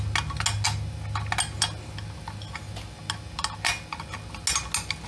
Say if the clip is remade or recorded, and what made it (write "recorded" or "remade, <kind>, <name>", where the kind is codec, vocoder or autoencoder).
recorded